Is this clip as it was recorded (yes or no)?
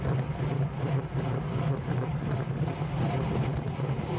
yes